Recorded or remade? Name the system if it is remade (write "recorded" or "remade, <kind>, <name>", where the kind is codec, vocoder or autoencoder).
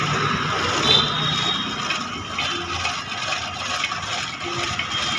recorded